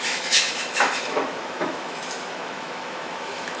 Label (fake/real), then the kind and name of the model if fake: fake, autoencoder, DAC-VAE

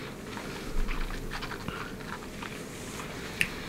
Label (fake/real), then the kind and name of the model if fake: real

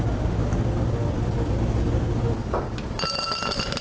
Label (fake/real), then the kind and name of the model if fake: real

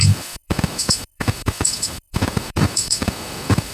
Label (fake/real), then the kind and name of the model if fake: fake, autoencoder, DAC-VAE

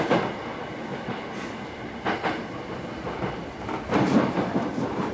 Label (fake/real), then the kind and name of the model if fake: real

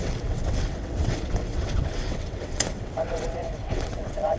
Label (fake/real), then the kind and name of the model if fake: fake, vocoder, WaveNeXt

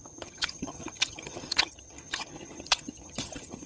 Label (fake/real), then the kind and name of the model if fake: fake, vocoder, HiFi-GAN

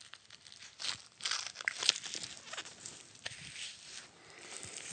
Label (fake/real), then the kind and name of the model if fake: real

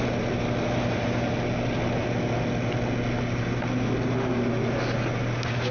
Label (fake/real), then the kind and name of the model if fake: real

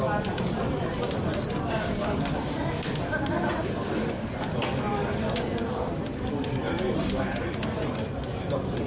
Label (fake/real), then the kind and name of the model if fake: real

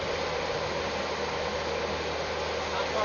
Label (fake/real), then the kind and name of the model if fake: real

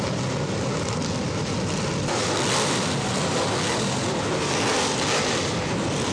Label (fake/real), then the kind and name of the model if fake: real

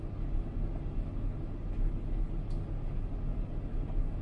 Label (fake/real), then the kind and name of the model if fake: real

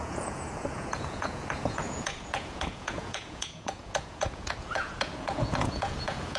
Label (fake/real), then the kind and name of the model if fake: fake, vocoder, Vocos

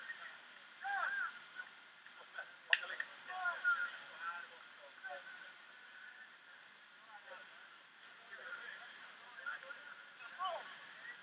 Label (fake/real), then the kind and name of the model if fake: real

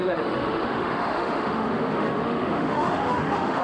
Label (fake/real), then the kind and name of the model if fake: fake, autoencoder, DAC-VAE